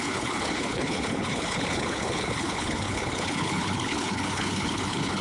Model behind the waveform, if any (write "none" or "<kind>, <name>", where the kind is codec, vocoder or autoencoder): codec, HILCodec